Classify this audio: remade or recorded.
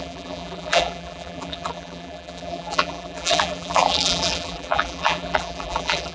remade